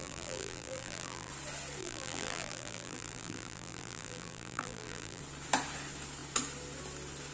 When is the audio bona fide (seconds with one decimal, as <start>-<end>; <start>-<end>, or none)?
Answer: 1.3-1.8; 5.2-7.3